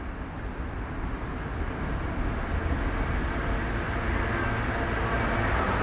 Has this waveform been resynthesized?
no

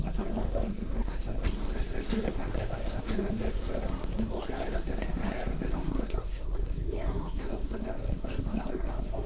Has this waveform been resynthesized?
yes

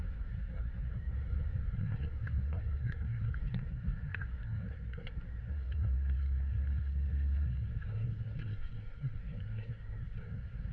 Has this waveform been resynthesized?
yes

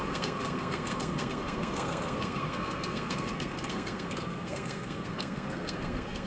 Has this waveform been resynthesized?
yes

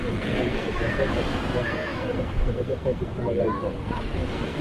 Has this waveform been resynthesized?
yes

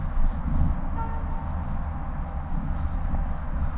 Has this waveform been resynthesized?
no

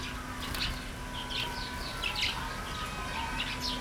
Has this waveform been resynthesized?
no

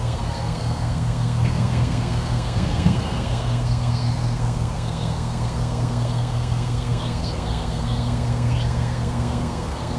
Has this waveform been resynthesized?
yes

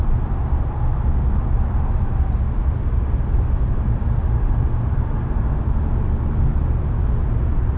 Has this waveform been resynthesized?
no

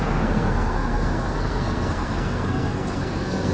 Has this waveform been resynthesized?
yes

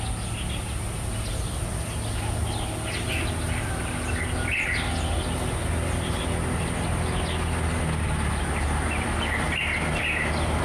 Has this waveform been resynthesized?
no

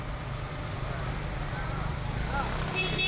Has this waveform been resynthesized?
no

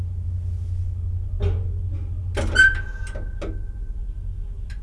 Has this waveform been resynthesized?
no